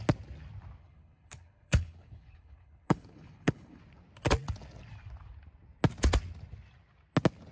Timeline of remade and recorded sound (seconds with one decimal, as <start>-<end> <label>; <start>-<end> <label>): 0.0-0.8 recorded; 0.8-3.8 remade; 3.8-7.5 recorded